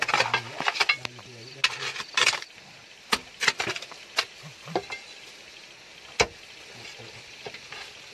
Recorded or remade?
recorded